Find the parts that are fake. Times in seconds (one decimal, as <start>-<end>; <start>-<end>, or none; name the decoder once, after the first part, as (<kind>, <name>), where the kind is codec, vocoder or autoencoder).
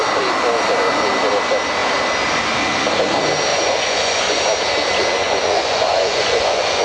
3.5-4.4 (vocoder, Vocos); 5.2-6.8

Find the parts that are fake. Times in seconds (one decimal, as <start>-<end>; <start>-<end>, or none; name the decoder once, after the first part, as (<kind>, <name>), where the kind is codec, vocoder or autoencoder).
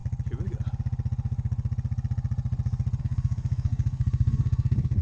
3.0-5.0 (codec, SNAC)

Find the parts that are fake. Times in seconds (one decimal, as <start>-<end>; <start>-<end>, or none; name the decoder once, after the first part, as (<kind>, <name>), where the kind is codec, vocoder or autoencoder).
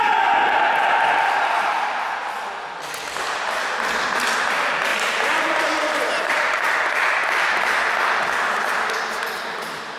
4.9-6.7 (vocoder, BigVGAN v2)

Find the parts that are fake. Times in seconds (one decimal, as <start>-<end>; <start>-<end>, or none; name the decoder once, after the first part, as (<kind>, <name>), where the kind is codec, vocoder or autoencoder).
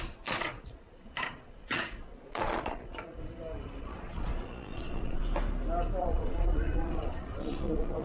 0.0-3.2 (vocoder, Vocos); 3.8-5.2; 6.0-8.0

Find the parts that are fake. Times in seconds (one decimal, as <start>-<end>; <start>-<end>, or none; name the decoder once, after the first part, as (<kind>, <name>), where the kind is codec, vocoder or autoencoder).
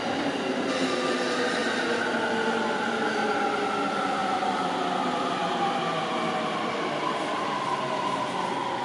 4.2-8.8 (vocoder, BigVGAN v2)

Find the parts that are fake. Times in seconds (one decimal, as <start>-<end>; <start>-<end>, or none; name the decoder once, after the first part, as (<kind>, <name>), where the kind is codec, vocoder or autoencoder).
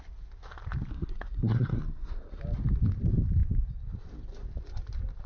0.9-2.4 (codec, SNAC)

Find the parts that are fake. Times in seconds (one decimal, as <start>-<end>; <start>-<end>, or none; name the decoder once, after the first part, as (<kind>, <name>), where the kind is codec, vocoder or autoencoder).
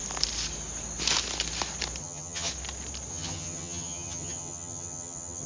2.0-2.5 (vocoder, HiFi-GAN); 3.1-5.5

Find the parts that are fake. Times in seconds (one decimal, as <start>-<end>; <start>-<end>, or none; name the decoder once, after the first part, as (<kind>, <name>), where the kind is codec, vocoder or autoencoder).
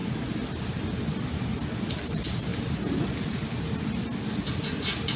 none